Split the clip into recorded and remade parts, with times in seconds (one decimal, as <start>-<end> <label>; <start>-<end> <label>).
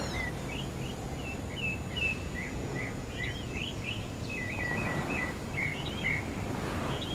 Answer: 0.0-2.3 recorded; 2.3-5.3 remade; 5.3-7.1 recorded